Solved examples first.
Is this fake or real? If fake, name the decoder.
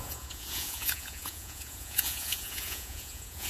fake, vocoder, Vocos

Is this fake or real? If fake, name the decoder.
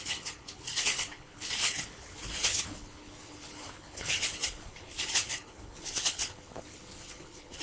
fake, codec, HILCodec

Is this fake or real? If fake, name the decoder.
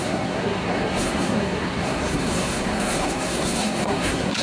fake, codec, SNAC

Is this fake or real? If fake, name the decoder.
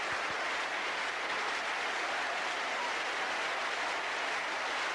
real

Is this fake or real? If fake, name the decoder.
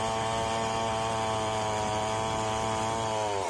real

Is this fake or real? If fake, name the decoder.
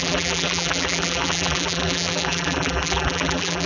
fake, vocoder, BigVGAN v2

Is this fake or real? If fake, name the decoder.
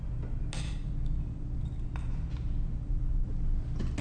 real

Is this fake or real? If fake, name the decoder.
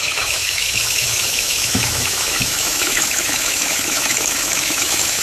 fake, autoencoder, DAC-VAE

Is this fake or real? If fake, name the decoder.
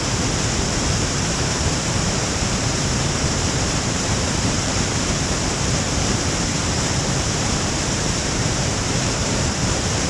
fake, vocoder, BigVGAN v2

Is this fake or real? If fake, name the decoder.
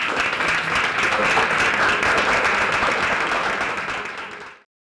real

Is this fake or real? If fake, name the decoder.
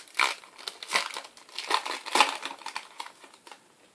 real